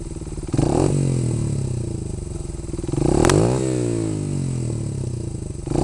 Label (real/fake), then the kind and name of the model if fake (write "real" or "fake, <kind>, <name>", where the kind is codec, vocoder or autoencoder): real